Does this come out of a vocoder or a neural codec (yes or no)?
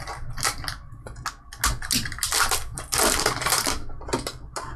no